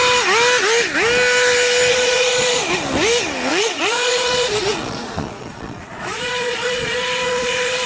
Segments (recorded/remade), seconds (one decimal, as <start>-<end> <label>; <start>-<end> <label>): 0.0-1.9 recorded; 1.9-2.6 remade; 2.6-3.5 recorded; 3.5-7.9 remade